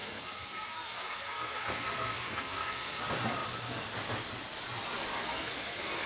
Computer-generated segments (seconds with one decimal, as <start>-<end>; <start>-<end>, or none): 0.0-3.0; 5.1-6.1